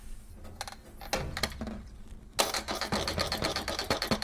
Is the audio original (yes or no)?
yes